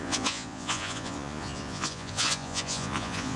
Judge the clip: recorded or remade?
remade